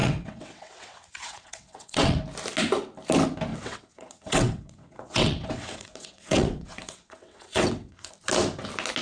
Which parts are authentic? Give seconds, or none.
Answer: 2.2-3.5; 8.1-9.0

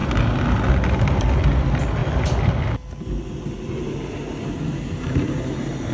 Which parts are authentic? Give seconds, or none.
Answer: 0.0-5.9

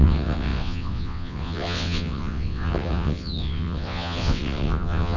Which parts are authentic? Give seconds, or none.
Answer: none